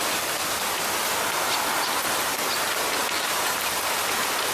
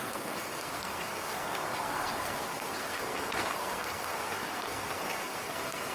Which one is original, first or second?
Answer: first